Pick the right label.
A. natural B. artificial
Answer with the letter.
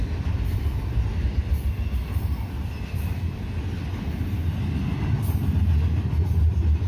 A